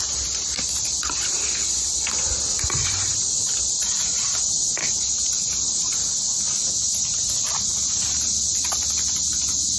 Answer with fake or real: real